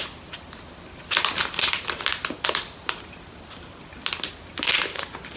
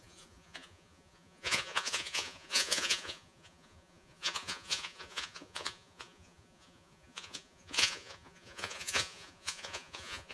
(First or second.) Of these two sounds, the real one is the first